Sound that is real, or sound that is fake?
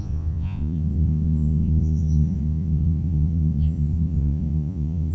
fake